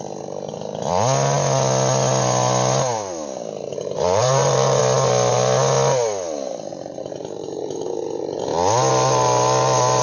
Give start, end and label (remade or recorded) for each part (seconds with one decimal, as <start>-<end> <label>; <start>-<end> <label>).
0.0-3.7 recorded; 3.7-4.8 remade; 4.8-6.7 recorded; 6.7-8.4 remade; 8.4-10.0 recorded